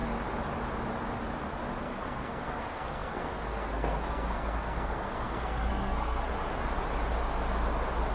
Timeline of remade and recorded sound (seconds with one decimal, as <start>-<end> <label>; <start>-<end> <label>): 0.0-1.8 recorded; 1.8-6.3 remade; 6.3-8.1 recorded